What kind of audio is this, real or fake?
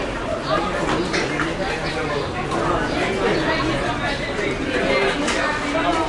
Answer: real